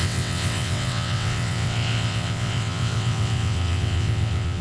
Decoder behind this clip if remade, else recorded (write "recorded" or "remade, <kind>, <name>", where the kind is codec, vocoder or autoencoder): remade, vocoder, WaveNeXt